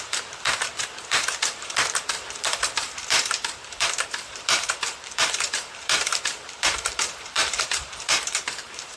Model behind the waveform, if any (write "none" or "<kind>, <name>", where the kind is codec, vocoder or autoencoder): vocoder, BigVGAN v2